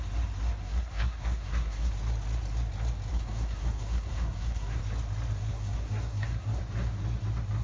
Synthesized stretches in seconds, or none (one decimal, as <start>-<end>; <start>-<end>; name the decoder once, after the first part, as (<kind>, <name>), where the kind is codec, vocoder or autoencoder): 0.6-1.9 (codec, SNAC); 3.1-4.8; 5.5-6.6